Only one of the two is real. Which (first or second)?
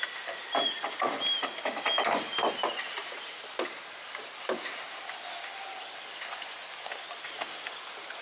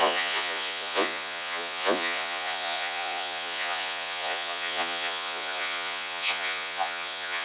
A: first